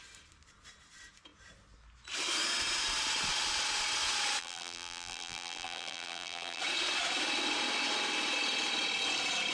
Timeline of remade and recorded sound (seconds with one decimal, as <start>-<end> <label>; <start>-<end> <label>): 0.0-4.4 recorded; 4.4-6.6 remade; 6.6-9.5 recorded